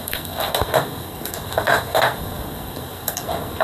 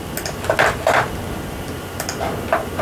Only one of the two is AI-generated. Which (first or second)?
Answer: first